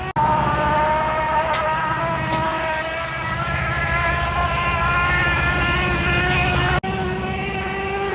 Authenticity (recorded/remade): recorded